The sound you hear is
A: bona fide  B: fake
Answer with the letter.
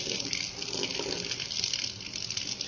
A